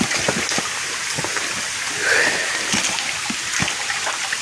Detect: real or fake real